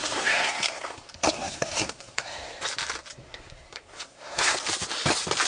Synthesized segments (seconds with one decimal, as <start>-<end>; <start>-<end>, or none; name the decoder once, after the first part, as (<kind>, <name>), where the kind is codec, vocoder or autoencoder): 0.0-2.6 (codec, SNAC); 3.2-4.6

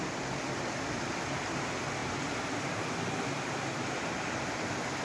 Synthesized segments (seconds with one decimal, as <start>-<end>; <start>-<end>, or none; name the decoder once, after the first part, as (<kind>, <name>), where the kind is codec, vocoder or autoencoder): none

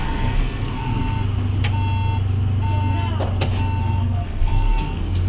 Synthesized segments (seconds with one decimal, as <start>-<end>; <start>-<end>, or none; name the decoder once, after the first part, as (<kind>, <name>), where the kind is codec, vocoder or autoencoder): 0.0-1.0 (codec, SNAC); 3.8-5.3